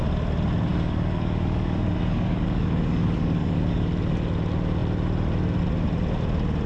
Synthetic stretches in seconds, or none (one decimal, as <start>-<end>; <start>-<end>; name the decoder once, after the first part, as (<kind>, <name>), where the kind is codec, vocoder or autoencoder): 0.7-3.9 (codec, DAC)